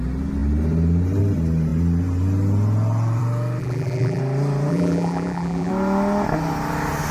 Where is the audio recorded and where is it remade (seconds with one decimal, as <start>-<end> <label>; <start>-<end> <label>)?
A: 0.0-3.6 recorded; 3.6-4.2 remade; 4.2-4.7 recorded; 4.7-5.7 remade; 5.7-7.1 recorded